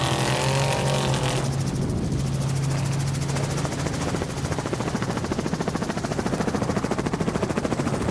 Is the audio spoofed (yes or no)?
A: no